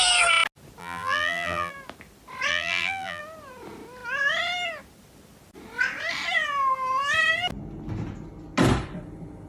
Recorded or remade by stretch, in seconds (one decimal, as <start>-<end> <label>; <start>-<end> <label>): 0.0-0.8 recorded; 0.8-1.7 remade; 1.7-2.5 recorded; 2.5-3.2 remade; 3.2-9.5 recorded

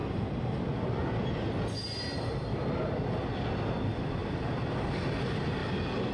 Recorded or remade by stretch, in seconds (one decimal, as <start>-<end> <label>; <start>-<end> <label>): 0.0-4.2 recorded; 4.2-4.7 remade; 4.7-6.1 recorded

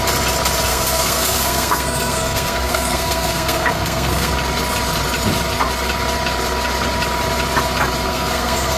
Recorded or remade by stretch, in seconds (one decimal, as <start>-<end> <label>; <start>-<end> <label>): 0.0-0.7 recorded; 0.7-4.3 remade; 4.3-8.1 recorded; 8.1-8.8 remade

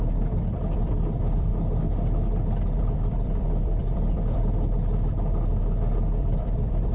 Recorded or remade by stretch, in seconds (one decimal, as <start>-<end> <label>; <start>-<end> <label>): 0.0-1.5 remade; 1.5-2.8 recorded; 2.8-5.6 remade; 5.6-6.2 recorded; 6.2-6.9 remade

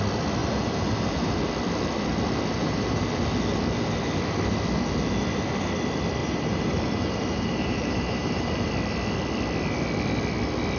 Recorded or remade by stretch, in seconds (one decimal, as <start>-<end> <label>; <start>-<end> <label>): 0.0-0.4 recorded; 0.4-1.5 remade; 1.5-2.6 recorded; 2.6-3.2 remade; 3.2-6.2 recorded; 6.2-8.7 remade; 8.7-10.8 recorded